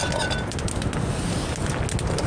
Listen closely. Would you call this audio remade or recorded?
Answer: recorded